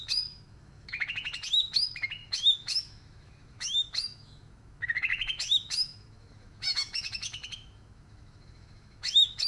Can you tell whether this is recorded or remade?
remade